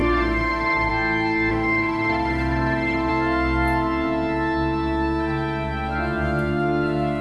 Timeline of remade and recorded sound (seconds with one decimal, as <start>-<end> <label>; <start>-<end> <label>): 0.0-0.9 remade; 0.9-1.5 recorded; 1.5-3.1 remade; 3.1-7.2 recorded